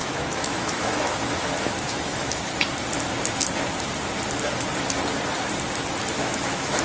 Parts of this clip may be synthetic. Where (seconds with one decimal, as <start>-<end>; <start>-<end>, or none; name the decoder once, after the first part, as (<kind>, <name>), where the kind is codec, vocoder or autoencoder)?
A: 0.0-2.4 (autoencoder, DAC-VAE); 6.2-6.8